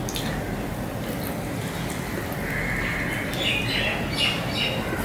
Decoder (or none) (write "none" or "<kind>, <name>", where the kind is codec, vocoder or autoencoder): none